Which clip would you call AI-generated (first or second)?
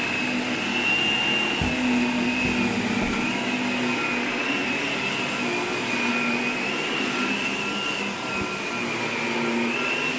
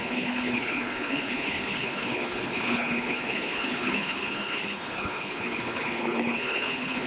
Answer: second